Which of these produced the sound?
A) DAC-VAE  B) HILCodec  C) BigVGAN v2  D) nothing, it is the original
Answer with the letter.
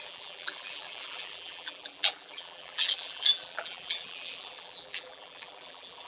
C